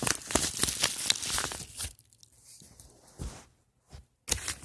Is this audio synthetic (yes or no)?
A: no